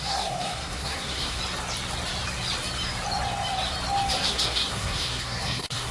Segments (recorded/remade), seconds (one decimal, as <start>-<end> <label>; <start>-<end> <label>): 0.0-1.4 remade; 1.4-4.2 recorded; 4.2-5.9 remade